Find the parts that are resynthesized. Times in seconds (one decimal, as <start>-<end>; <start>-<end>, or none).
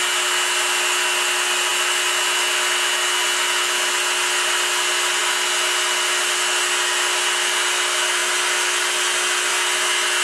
none